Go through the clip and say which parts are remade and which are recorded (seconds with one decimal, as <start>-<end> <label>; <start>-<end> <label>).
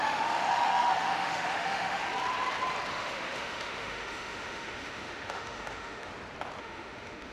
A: 0.0-2.0 remade; 2.0-2.9 recorded; 2.9-6.1 remade; 6.1-6.6 recorded; 6.6-7.3 remade